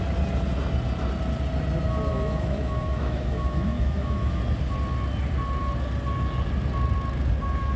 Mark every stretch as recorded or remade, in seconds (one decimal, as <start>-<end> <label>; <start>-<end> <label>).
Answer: 0.0-2.1 recorded; 2.1-4.4 remade; 4.4-7.8 recorded